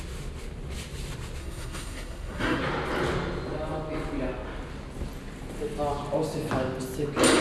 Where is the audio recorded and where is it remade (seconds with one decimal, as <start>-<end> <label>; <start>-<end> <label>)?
0.0-1.4 recorded; 1.4-2.6 remade; 2.6-7.4 recorded